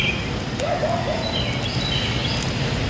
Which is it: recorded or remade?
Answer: recorded